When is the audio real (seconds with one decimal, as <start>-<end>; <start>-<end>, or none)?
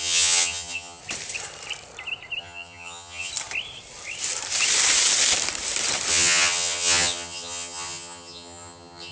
1.0-2.4; 3.3-6.1